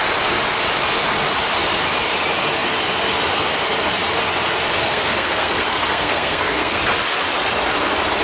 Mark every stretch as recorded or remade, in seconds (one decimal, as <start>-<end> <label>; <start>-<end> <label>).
0.0-4.8 recorded; 4.8-6.8 remade; 6.8-8.2 recorded